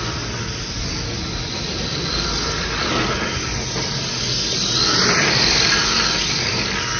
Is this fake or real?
real